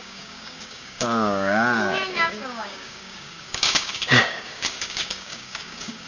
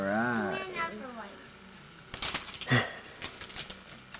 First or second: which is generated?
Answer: first